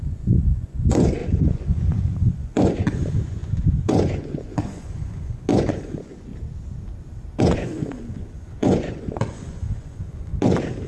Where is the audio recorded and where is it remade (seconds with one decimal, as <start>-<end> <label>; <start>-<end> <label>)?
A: 0.0-6.3 remade; 6.3-7.4 recorded; 7.4-10.3 remade; 10.3-10.9 recorded

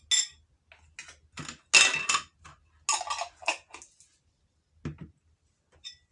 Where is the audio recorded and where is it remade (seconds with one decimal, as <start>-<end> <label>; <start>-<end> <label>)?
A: 0.0-6.1 recorded

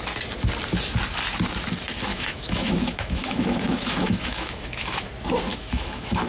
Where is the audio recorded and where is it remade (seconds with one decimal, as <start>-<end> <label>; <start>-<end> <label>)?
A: 0.0-2.1 recorded; 2.1-5.1 remade; 5.1-5.5 recorded; 5.5-6.3 remade

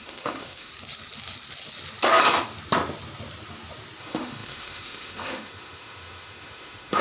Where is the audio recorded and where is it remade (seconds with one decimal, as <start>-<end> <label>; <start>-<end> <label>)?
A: 0.0-0.7 remade; 0.7-4.0 recorded; 4.0-7.0 remade

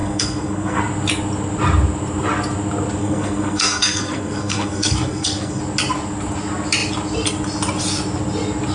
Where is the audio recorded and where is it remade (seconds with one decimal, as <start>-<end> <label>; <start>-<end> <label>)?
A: 0.0-0.8 remade; 0.8-3.0 recorded; 3.0-5.6 remade; 5.6-8.7 recorded